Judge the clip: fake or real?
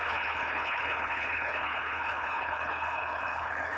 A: fake